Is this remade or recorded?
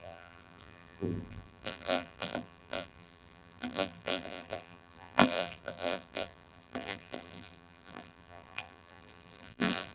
remade